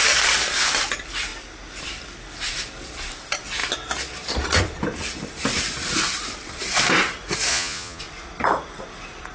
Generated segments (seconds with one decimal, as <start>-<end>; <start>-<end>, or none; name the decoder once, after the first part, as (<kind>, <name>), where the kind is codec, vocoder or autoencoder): 7.5-8.0 (vocoder, Vocos)